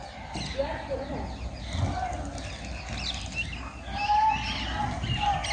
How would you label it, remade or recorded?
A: recorded